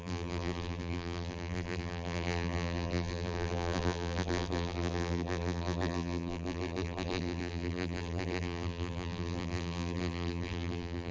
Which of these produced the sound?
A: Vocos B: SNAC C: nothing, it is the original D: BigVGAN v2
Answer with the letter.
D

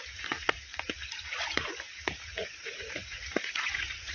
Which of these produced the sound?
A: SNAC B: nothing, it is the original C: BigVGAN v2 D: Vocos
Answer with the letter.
D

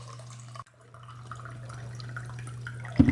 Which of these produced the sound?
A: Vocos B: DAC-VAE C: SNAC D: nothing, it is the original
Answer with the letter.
D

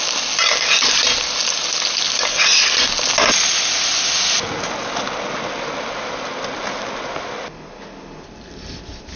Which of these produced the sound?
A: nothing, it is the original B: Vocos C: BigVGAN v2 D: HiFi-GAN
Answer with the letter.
A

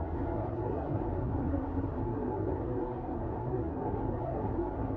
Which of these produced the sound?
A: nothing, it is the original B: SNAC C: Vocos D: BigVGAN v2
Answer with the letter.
B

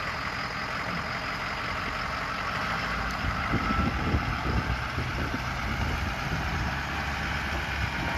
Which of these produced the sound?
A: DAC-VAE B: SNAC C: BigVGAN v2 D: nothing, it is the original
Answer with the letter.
D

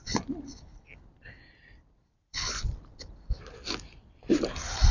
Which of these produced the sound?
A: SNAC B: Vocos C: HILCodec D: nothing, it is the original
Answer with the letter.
D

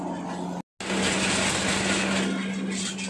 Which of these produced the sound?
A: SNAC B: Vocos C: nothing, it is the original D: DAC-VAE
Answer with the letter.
C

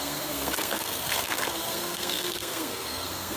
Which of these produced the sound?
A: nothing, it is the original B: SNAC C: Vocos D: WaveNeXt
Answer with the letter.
B